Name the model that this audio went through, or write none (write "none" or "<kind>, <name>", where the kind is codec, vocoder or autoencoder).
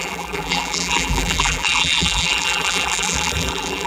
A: vocoder, BigVGAN v2